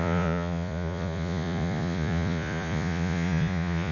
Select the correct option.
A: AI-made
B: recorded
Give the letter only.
A